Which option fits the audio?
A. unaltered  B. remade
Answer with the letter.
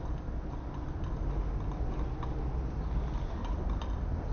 A